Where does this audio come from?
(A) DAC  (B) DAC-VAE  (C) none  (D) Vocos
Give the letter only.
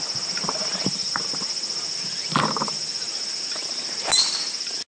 C